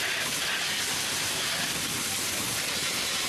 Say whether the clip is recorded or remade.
recorded